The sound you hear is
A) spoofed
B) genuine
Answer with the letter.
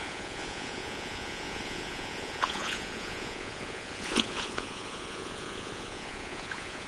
A